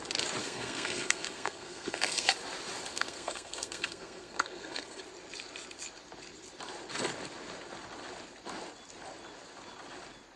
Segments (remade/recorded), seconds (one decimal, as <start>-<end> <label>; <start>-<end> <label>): 0.0-0.4 recorded; 0.4-2.3 remade; 2.3-2.9 recorded; 2.9-5.0 remade; 5.0-10.4 recorded